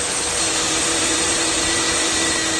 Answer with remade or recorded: recorded